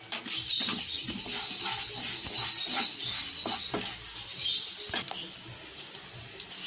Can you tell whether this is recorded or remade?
recorded